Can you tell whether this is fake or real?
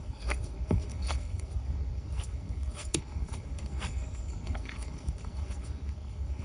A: fake